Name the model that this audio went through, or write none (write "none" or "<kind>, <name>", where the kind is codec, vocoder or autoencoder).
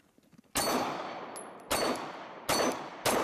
none